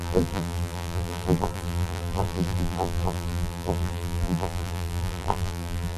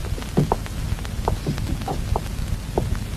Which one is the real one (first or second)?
second